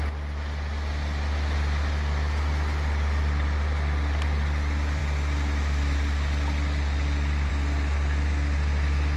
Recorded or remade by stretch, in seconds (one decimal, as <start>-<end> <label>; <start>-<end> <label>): 0.0-9.2 recorded